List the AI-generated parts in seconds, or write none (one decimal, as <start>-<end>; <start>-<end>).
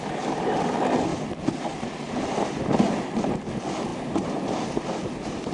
none